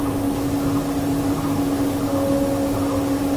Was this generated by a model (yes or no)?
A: no